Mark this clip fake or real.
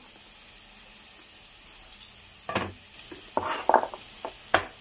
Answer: real